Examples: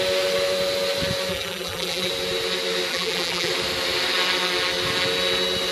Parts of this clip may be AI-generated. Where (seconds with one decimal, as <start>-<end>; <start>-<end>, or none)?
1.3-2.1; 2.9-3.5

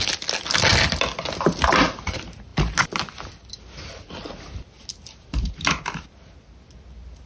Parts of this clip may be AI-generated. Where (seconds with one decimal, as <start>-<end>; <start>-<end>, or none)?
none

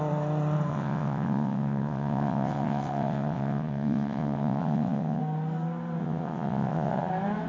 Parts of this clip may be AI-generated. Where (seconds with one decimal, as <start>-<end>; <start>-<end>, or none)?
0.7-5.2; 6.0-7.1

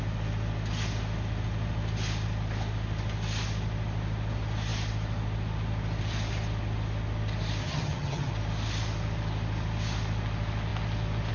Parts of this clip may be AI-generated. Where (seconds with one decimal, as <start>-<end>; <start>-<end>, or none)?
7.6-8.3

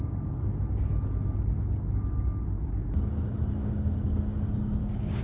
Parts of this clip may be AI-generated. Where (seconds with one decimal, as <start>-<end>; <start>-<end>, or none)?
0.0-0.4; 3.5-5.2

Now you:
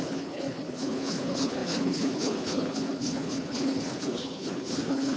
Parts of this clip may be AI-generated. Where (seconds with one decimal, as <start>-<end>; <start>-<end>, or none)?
0.0-5.2